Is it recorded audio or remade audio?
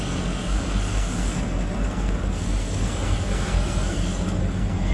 remade